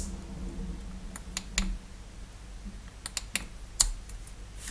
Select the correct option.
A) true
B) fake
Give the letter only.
A